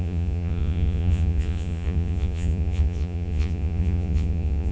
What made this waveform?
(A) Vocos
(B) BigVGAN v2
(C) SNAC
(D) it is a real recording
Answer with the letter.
A